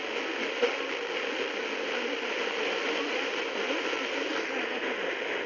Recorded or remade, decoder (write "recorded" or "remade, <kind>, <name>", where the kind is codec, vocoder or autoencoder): recorded